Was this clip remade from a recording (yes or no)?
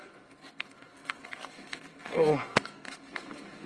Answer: yes